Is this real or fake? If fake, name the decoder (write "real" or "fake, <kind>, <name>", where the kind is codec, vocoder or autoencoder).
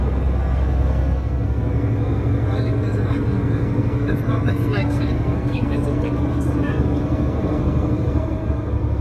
fake, codec, SNAC